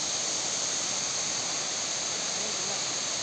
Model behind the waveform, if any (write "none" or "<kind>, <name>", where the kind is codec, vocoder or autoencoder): none